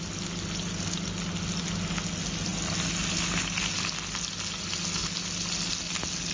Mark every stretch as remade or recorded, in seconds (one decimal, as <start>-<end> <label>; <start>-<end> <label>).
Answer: 0.0-6.3 recorded